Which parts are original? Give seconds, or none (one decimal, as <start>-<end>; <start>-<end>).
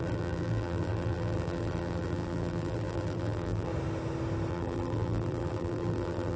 3.7-4.5